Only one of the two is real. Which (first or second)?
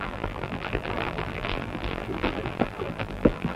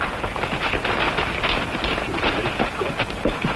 second